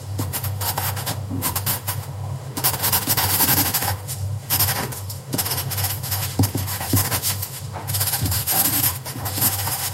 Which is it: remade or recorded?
remade